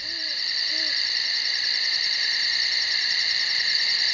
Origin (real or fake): fake